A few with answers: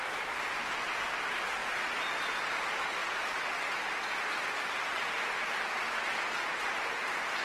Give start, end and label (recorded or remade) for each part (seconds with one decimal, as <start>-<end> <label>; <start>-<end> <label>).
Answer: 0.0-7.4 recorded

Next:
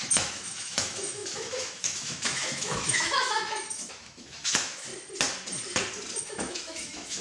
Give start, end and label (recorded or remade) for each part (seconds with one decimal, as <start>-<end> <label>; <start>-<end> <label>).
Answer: 0.0-4.9 remade; 4.9-6.2 recorded; 6.2-7.2 remade

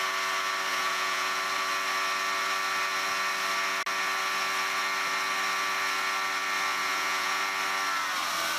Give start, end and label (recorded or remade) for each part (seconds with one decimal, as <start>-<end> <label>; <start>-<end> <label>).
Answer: 0.0-0.7 recorded; 0.7-1.4 remade; 1.4-6.7 recorded; 6.7-7.4 remade; 7.4-8.6 recorded

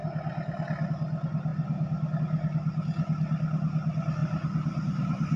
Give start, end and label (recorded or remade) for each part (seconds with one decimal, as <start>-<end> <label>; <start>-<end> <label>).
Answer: 0.0-5.4 recorded